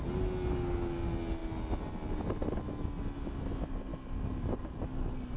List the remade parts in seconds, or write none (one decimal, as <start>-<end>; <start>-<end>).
3.9-4.5

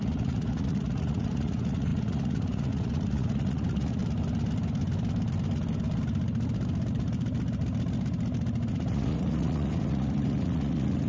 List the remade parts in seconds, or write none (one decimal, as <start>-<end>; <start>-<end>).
0.0-4.0; 8.7-11.1

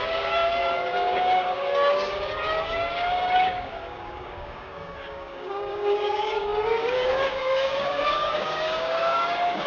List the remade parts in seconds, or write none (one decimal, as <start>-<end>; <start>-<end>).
0.0-9.7

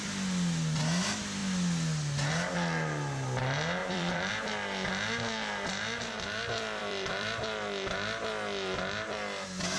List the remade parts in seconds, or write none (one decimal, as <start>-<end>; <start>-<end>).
3.8-4.3; 6.8-7.4